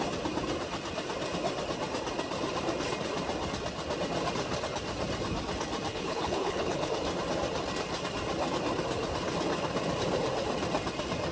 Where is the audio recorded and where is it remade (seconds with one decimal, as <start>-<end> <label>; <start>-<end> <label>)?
0.0-5.9 recorded; 5.9-6.9 remade; 6.9-11.3 recorded